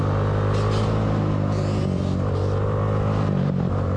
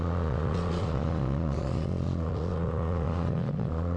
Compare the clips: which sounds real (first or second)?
first